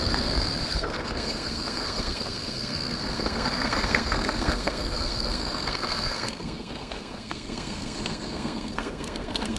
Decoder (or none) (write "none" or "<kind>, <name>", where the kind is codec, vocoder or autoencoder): codec, SNAC